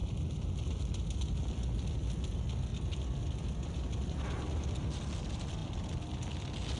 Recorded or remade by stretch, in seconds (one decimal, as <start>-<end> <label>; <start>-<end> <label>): 0.0-2.7 recorded; 2.7-4.2 remade; 4.2-6.8 recorded